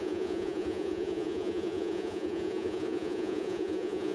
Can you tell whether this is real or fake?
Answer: fake